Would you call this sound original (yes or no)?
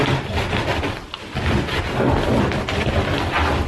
yes